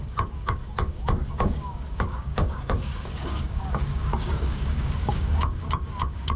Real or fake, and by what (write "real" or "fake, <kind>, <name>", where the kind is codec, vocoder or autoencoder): fake, codec, DAC